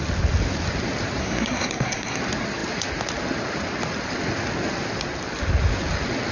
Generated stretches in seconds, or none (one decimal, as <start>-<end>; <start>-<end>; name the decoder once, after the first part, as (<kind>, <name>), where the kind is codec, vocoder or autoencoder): 1.2-2.2 (codec, SNAC)